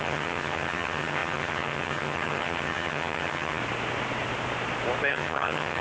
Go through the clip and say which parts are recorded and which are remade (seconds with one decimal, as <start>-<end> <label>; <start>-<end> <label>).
0.0-3.6 remade; 3.6-5.1 recorded; 5.1-5.8 remade